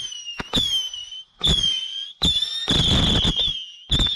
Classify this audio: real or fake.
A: real